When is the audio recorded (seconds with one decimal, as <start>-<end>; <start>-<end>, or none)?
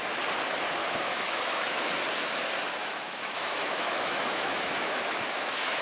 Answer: 0.0-0.8; 1.9-2.8